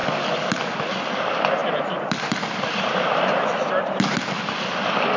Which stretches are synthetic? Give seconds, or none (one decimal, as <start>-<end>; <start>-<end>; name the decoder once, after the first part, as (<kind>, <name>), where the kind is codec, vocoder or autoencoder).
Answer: 0.0-0.6 (vocoder, BigVGAN v2); 1.6-3.5